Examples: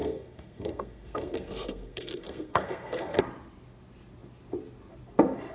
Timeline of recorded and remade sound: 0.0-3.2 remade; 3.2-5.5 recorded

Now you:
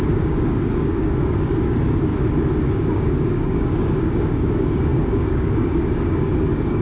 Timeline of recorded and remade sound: 0.0-2.1 remade; 2.1-2.7 recorded; 2.7-6.8 remade

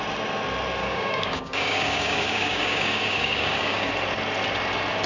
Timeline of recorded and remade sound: 0.0-0.8 recorded; 0.8-3.9 remade; 3.9-5.1 recorded